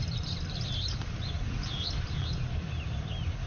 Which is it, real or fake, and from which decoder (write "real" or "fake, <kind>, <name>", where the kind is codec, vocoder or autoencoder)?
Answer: fake, vocoder, BigVGAN v2